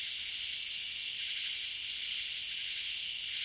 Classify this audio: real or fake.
real